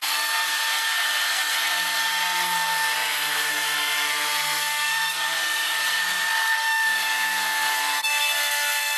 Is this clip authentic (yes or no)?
no